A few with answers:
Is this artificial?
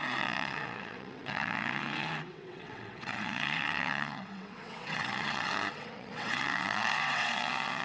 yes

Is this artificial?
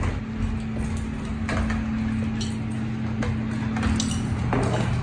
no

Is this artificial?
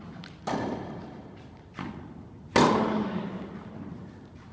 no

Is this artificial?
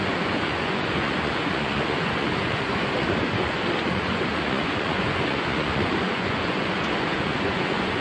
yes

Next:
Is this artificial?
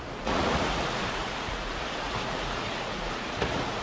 yes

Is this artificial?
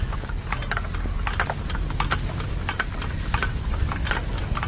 no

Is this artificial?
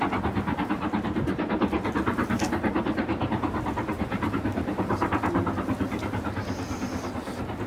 no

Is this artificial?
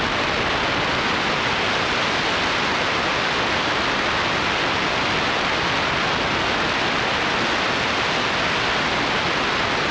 no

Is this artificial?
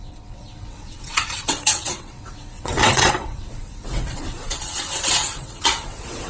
yes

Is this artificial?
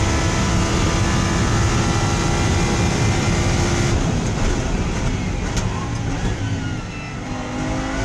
no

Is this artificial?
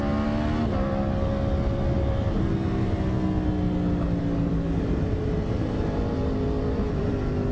no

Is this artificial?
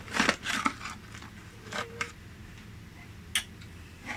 no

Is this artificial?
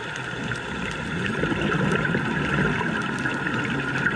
no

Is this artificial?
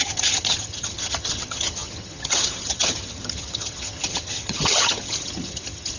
yes